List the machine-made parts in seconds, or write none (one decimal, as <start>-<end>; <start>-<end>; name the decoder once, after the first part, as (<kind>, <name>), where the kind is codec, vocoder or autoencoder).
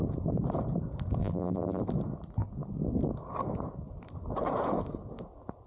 1.2-1.8 (vocoder, BigVGAN v2)